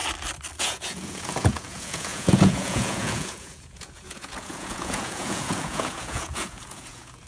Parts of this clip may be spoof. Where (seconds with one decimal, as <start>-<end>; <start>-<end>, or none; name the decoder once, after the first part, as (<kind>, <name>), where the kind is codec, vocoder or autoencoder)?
0.6-7.3 (vocoder, Vocos)